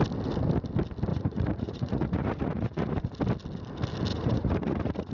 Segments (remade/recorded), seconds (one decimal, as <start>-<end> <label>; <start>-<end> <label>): 0.0-1.1 recorded; 1.1-3.1 remade; 3.1-4.1 recorded; 4.1-5.1 remade